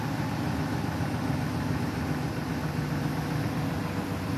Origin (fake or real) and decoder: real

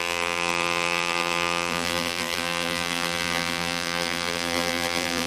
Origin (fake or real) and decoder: fake, vocoder, BigVGAN v2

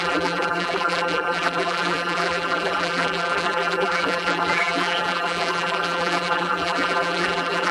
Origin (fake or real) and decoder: fake, vocoder, BigVGAN v2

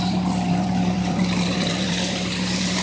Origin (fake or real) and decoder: fake, vocoder, BigVGAN v2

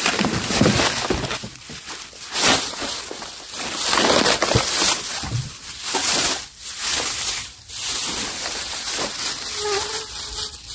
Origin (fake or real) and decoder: real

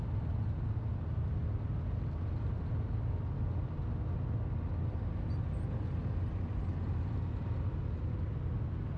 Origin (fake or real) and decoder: real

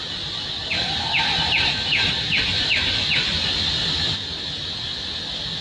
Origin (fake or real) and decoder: real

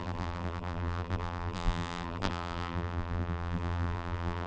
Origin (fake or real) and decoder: fake, vocoder, BigVGAN v2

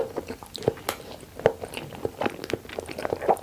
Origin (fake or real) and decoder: real